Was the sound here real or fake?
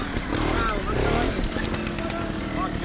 real